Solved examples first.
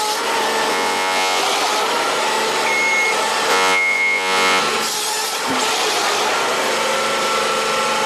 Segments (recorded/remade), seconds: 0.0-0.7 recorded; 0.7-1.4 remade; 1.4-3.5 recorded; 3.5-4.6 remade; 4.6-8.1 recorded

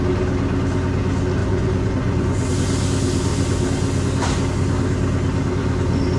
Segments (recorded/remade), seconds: 0.0-1.4 recorded; 1.4-2.5 remade; 2.5-6.2 recorded

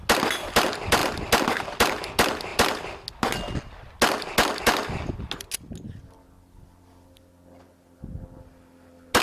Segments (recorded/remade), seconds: 0.0-9.2 recorded

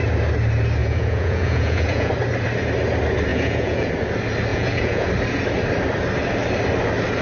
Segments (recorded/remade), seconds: 0.0-0.8 recorded; 0.8-2.1 remade; 2.1-3.3 recorded; 3.3-3.9 remade; 3.9-4.5 recorded; 4.5-5.1 remade; 5.1-7.2 recorded

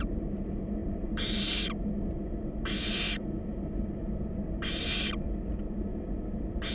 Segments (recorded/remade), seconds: 0.0-6.7 recorded

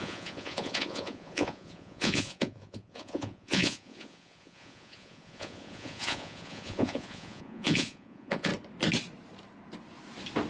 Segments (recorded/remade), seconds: 0.0-8.5 remade; 8.5-10.5 recorded

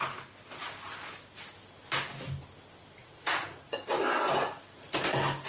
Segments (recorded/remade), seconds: 0.0-3.0 recorded; 3.0-3.8 remade; 3.8-5.5 recorded